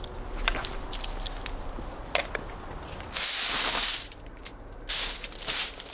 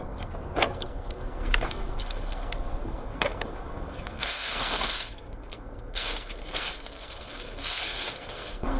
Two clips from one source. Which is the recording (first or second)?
first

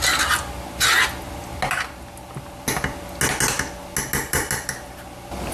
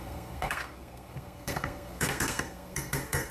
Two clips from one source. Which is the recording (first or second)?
first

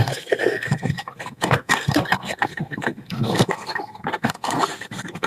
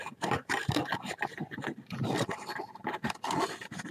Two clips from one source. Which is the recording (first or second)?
second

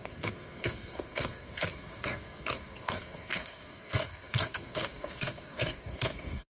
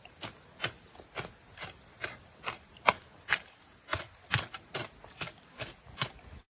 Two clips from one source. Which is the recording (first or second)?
second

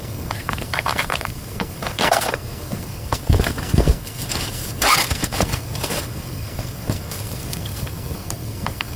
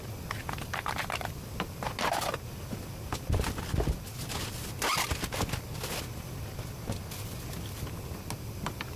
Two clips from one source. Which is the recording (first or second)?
second